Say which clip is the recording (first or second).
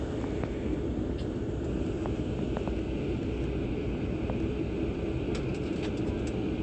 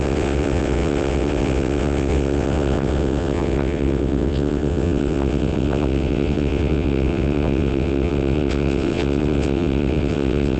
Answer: first